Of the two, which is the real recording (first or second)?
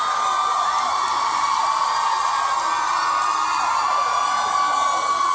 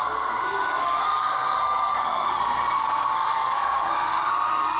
first